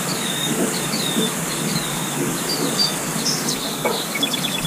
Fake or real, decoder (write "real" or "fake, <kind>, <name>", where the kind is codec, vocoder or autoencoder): fake, codec, DAC